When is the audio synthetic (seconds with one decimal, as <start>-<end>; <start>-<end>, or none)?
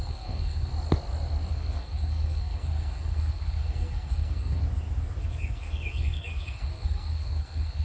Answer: 0.0-0.7; 1.5-4.6; 5.2-7.8